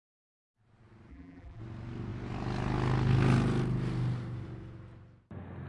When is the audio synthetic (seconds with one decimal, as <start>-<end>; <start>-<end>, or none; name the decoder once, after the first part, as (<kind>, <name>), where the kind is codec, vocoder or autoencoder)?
1.1-1.6 (vocoder, BigVGAN v2)